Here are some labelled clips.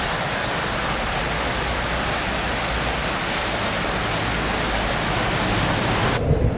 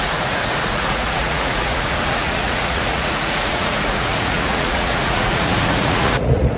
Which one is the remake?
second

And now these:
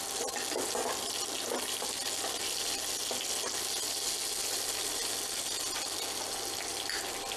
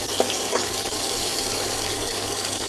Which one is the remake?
second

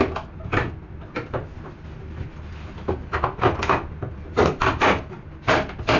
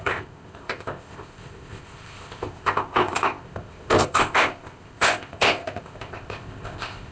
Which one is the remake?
second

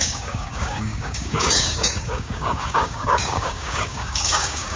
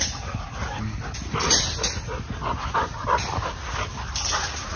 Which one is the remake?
first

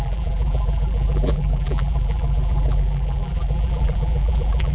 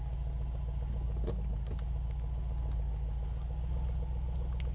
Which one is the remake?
first